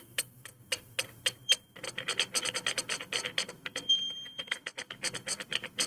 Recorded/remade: recorded